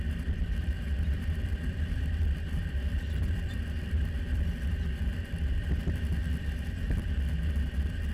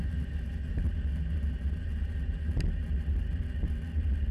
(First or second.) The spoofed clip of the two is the first